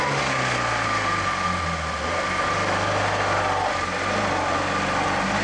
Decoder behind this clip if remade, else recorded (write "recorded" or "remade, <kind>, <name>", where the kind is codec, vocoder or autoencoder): recorded